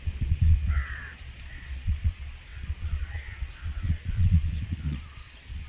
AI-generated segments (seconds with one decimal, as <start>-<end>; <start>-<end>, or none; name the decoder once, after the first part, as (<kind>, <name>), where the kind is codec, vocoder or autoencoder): 0.0-5.7 (vocoder, Vocos)